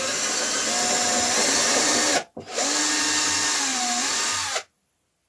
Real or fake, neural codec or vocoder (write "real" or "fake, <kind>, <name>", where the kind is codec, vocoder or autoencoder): real